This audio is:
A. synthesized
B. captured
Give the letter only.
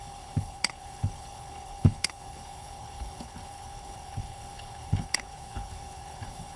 A